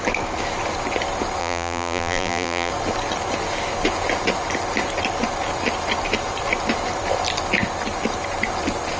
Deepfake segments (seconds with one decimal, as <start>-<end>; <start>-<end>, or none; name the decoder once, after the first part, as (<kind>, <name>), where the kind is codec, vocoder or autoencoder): 1.4-2.7 (vocoder, BigVGAN v2)